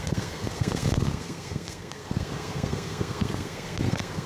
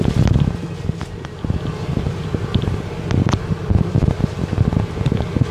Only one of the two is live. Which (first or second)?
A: second